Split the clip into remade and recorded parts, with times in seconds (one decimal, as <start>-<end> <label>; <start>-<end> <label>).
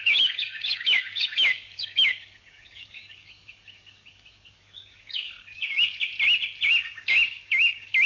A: 0.0-6.1 remade; 6.1-6.7 recorded; 6.7-8.1 remade